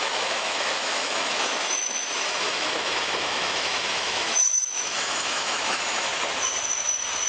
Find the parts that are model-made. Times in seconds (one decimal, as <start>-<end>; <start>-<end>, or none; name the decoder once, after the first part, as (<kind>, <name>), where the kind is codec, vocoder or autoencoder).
0.0-6.1 (autoencoder, DAC-VAE)